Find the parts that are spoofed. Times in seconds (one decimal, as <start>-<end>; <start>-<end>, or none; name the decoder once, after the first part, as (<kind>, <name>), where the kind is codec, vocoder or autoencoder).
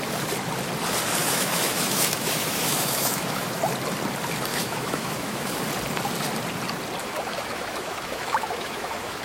1.2-3.6 (autoencoder, DAC-VAE); 4.5-5.6; 7.0-9.2